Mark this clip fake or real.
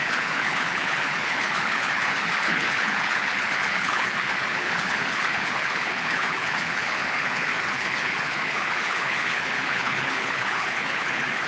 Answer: fake